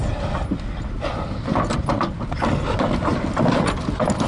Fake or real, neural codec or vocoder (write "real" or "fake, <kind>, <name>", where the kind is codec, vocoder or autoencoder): real